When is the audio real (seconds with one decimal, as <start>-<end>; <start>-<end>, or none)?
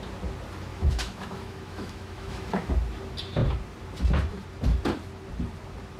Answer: 0.0-0.7; 2.7-6.0